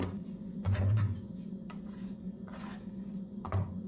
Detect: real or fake fake